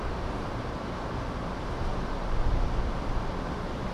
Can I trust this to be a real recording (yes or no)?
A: yes